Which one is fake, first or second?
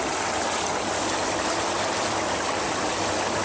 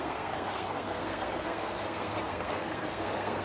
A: second